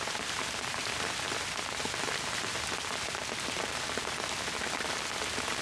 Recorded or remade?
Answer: recorded